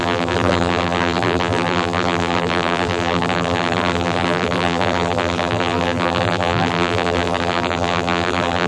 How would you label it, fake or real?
fake